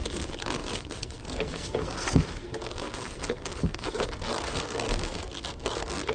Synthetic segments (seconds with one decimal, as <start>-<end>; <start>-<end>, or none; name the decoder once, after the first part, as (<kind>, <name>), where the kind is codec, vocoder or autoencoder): 0.0-6.1 (codec, SNAC)